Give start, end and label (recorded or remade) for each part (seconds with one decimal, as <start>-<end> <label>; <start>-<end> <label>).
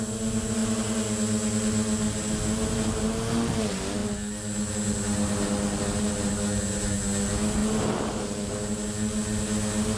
0.0-10.0 recorded